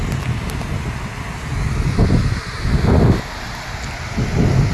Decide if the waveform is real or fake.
real